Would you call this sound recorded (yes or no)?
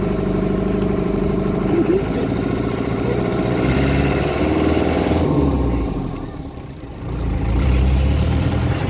no